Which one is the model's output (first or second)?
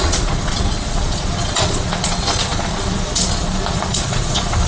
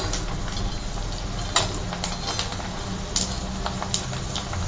first